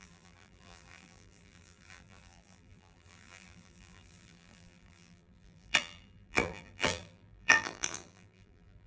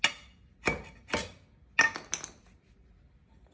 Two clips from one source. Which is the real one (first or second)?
second